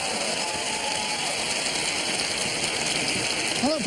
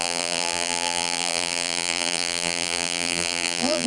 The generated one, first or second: second